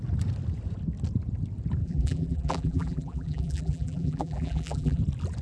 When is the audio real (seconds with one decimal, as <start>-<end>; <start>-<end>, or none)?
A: 0.0-1.8; 5.0-5.4